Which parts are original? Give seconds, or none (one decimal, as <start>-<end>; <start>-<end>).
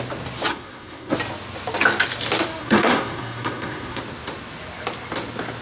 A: 0.0-0.5; 1.1-2.6; 4.0-5.6